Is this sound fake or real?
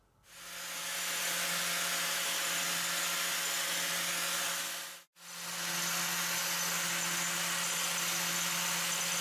real